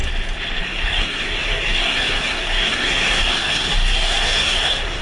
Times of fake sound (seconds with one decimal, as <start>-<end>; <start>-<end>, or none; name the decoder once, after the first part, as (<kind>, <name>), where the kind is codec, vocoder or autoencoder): 0.6-5.0 (codec, SNAC)